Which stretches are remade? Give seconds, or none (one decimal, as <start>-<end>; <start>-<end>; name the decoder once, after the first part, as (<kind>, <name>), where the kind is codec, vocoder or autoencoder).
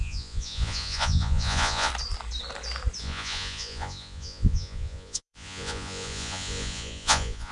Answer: 0.0-1.9 (vocoder, Vocos); 3.0-7.5